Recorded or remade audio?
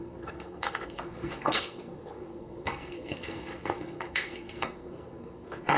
remade